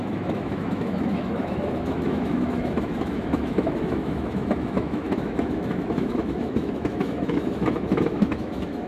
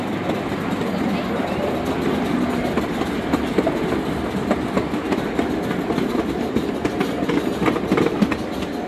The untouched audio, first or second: second